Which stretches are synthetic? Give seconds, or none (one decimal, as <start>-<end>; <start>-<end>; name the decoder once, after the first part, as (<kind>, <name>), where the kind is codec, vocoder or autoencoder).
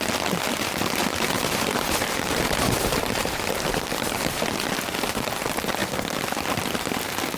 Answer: 1.0-3.7 (vocoder, BigVGAN v2)